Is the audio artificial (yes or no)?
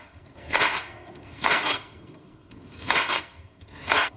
yes